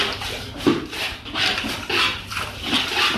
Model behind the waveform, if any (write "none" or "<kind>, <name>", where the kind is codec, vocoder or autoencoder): none